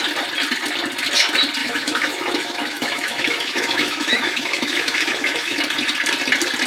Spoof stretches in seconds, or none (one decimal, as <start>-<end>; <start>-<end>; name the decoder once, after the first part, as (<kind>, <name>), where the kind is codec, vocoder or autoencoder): 1.6-5.6 (autoencoder, DAC-VAE)